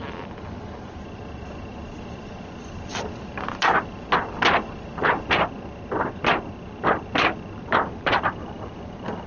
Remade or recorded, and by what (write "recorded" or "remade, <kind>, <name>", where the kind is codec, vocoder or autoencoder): recorded